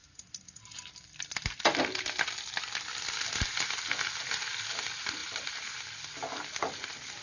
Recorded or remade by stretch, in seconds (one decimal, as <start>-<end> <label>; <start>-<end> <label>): 0.0-4.3 remade; 4.3-7.2 recorded